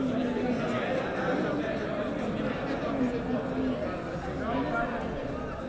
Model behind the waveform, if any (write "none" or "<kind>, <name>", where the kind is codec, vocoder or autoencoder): none